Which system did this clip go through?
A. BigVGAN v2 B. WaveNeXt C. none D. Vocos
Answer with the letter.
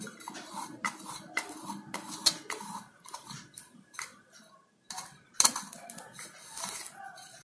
C